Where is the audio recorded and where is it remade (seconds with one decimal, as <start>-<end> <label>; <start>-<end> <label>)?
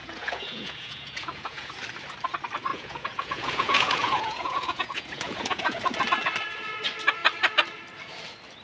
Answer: 0.0-1.7 remade; 1.7-2.7 recorded; 2.7-5.8 remade; 5.8-8.6 recorded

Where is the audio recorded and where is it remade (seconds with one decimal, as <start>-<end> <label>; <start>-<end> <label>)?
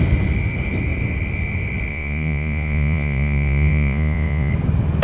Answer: 0.0-1.9 recorded; 1.9-4.5 remade; 4.5-5.0 recorded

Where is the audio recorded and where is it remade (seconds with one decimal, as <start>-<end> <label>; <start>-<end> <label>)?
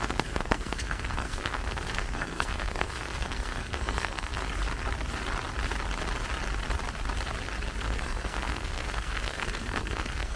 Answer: 0.0-4.3 remade; 4.3-7.8 recorded; 7.8-10.4 remade